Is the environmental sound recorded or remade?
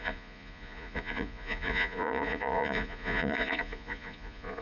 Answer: remade